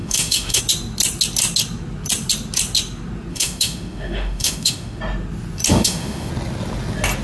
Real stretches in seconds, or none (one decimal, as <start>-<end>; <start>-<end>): 0.6-3.3; 5.0-5.7; 6.3-7.2